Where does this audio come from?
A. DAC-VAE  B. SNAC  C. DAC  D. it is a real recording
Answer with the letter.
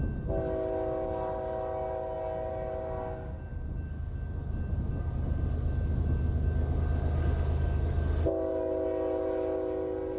D